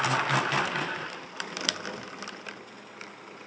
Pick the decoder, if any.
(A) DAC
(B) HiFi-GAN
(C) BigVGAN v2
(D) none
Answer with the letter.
D